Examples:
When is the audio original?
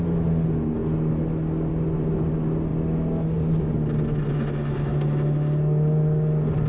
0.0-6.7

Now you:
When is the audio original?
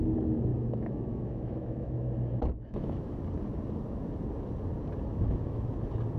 0.0-0.5; 3.2-5.1; 5.7-6.2